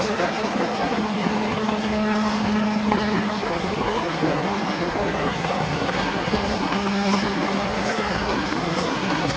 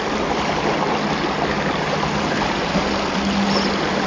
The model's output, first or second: first